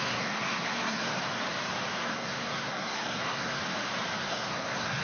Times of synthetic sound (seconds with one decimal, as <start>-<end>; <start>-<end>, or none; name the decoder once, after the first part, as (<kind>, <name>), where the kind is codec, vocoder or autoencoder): 0.0-1.1 (codec, SNAC); 2.0-3.6; 4.2-5.0